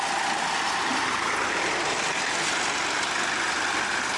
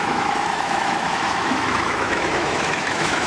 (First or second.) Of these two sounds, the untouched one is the first